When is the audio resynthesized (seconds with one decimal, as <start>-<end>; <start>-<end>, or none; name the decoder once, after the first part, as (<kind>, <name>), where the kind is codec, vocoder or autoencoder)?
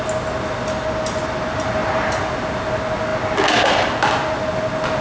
1.8-2.5 (vocoder, BigVGAN v2)